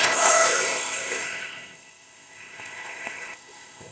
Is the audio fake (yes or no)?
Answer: yes